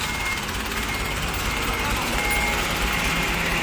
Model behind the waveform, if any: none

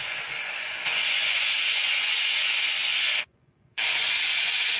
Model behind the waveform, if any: vocoder, Vocos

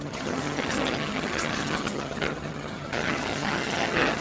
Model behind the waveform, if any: vocoder, HiFi-GAN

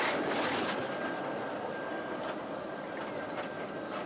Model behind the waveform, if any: none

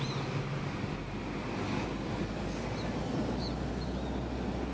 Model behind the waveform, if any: none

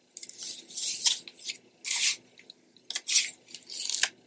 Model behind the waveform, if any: none